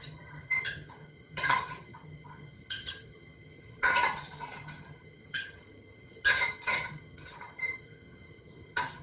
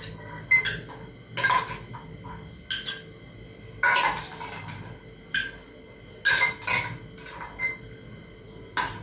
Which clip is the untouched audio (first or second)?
second